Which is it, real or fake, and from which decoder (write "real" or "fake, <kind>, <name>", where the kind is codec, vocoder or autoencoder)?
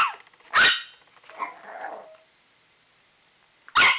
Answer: real